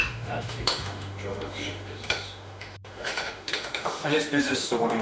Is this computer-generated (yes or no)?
yes